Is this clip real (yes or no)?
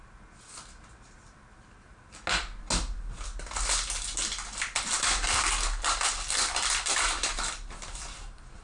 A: yes